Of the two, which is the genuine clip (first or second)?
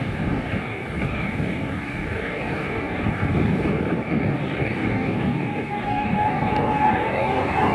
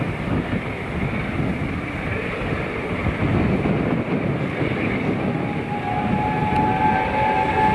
second